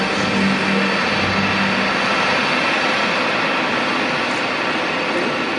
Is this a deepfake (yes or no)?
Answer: no